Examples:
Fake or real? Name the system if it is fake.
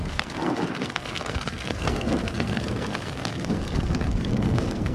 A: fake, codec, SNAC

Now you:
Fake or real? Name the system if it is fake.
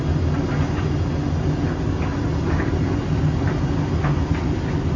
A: real